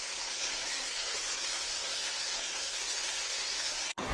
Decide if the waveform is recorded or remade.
remade